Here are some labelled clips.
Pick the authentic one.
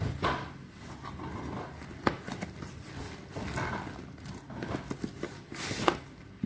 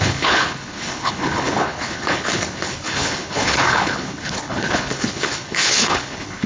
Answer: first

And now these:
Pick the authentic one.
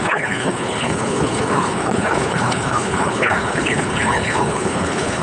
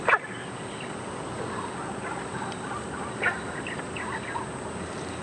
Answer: second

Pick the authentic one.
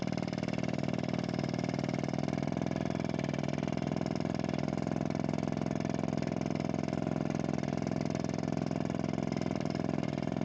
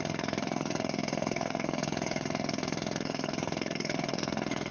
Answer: first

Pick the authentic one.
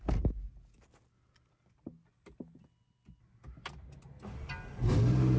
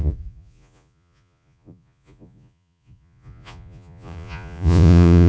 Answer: first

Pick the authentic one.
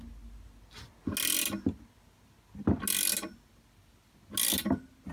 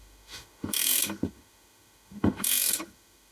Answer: first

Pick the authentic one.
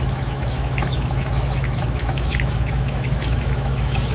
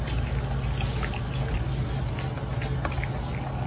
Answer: second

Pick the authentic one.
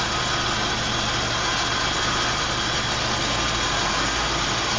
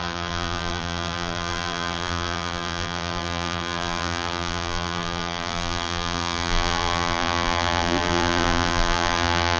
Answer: first